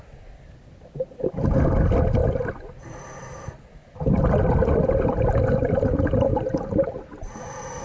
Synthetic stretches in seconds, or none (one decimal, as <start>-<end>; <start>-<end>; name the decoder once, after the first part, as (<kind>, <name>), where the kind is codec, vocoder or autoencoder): 0.0-7.8 (vocoder, BigVGAN v2)